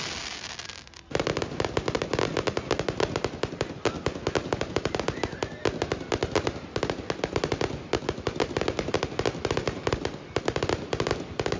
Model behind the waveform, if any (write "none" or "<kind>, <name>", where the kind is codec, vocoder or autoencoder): none